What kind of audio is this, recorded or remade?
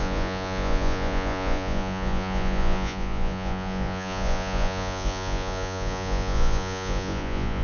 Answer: remade